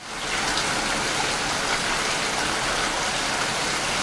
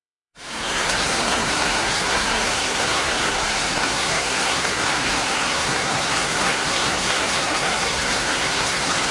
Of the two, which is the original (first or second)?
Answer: first